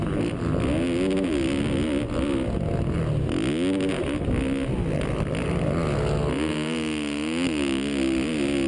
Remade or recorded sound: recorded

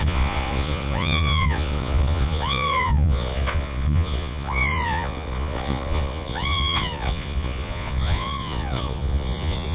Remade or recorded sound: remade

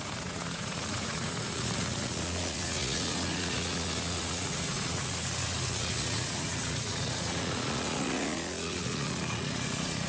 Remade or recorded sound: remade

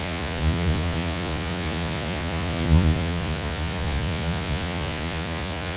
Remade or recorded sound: remade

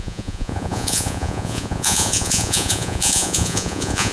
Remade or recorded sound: remade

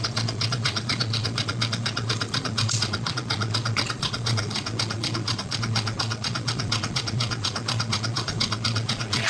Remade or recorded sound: remade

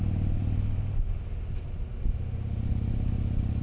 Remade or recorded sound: recorded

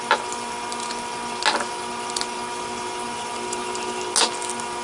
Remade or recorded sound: recorded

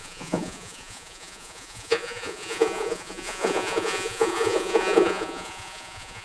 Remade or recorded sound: remade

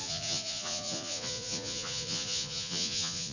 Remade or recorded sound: remade